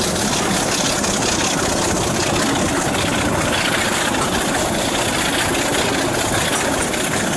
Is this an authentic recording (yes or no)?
yes